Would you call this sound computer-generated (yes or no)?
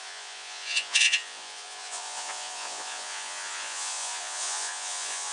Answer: yes